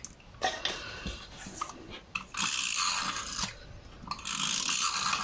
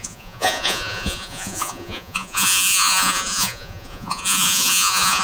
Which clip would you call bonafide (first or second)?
first